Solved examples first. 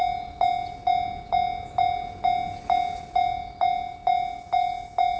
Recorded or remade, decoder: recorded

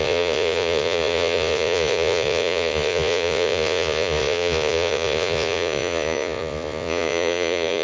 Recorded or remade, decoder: remade, vocoder, Vocos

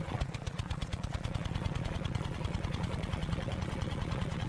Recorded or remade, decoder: remade, vocoder, Vocos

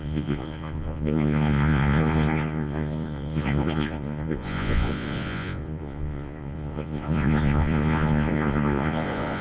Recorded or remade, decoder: remade, vocoder, Vocos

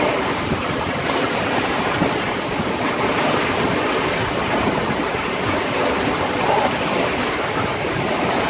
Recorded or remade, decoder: recorded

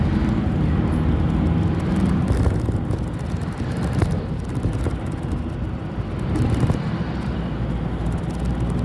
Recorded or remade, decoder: recorded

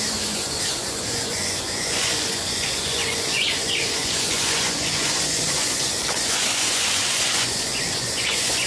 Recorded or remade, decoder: remade, vocoder, Vocos